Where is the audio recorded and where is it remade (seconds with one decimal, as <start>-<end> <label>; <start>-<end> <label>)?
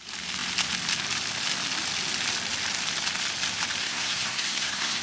0.0-3.8 recorded; 3.8-5.0 remade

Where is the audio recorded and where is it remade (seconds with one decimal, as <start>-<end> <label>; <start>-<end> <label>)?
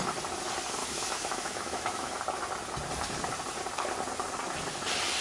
0.0-0.8 recorded; 0.8-2.2 remade; 2.2-5.2 recorded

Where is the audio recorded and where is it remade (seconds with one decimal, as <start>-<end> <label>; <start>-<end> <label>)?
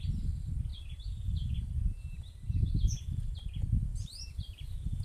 0.0-0.7 recorded; 0.7-2.7 remade; 2.7-3.9 recorded; 3.9-5.0 remade